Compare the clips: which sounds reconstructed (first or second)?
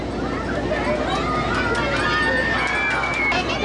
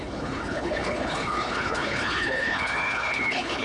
second